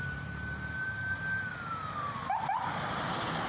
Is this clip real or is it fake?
real